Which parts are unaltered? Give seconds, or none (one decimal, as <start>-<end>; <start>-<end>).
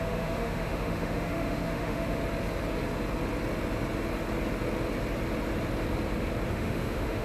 2.2-6.5